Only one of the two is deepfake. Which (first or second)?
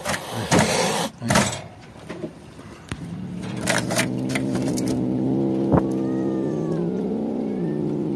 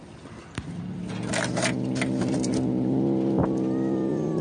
first